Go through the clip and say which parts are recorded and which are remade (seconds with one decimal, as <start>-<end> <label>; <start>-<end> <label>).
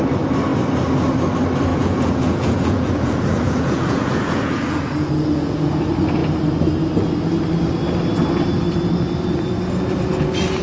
0.0-1.7 recorded; 1.7-5.8 remade; 5.8-10.6 recorded